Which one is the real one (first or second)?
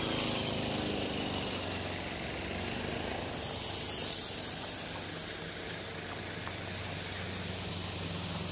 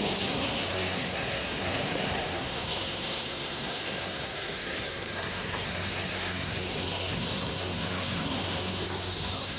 first